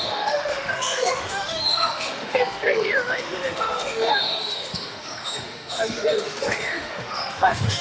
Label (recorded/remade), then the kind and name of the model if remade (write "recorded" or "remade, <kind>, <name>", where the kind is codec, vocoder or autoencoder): remade, autoencoder, DAC-VAE